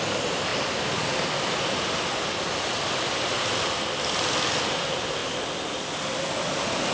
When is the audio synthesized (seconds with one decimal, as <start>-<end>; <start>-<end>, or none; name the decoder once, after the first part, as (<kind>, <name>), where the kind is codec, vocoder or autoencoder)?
none